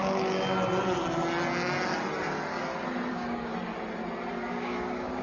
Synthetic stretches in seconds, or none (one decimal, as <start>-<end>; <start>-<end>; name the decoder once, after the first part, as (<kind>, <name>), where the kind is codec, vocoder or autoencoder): 3.1-3.5 (codec, DAC); 4.5-5.2